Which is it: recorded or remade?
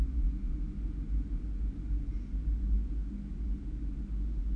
recorded